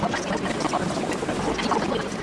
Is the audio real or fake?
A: real